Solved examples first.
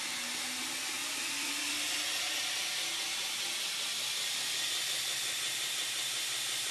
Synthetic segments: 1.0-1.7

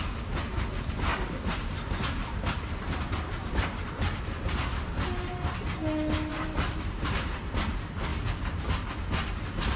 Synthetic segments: 1.1-4.8; 6.3-7.4; 8.1-8.7

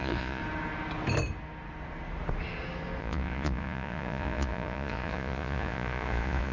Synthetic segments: 0.0-0.4; 3.0-6.5

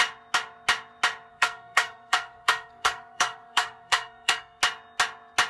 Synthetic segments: 1.3-4.6

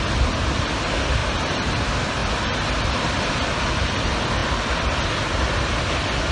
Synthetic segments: 1.2-1.8; 2.2-3.3; 4.4-5.0

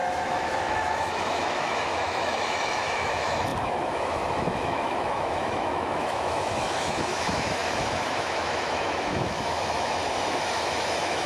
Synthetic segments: 0.0-10.0; 10.5-11.3

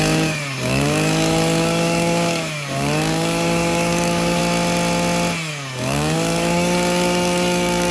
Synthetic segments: 0.0-4.4; 5.5-7.9

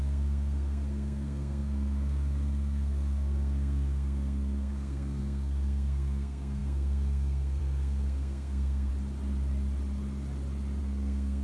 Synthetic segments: 0.0-8.9; 10.8-11.4